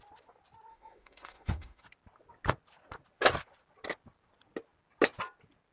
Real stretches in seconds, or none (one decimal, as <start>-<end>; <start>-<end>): 0.0-0.7; 1.8-5.7